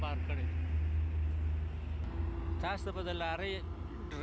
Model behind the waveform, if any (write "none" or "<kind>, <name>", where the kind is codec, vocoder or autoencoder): none